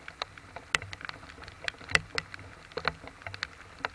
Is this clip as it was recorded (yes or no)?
yes